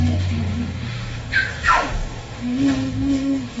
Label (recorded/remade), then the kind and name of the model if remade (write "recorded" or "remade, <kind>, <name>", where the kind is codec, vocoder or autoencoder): remade, autoencoder, DAC-VAE